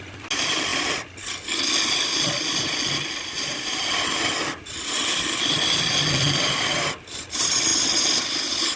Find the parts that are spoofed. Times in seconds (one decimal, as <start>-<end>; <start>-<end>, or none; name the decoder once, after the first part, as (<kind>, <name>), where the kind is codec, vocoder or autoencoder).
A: none